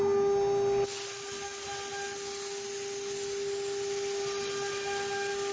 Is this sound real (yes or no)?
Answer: yes